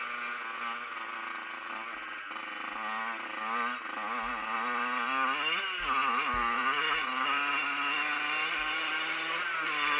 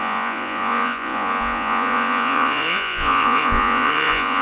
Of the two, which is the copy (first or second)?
second